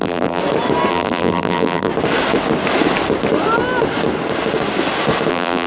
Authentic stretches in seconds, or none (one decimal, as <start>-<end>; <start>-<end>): 0.4-0.9; 1.9-5.3